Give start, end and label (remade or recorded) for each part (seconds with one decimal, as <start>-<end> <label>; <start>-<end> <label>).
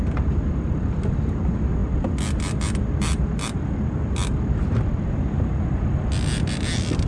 0.0-7.1 recorded